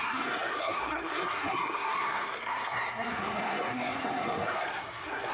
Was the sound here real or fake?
fake